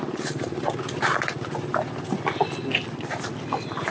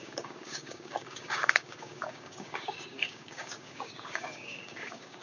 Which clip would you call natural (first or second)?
first